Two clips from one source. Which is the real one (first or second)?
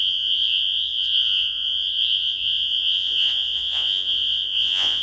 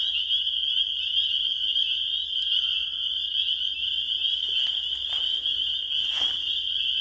second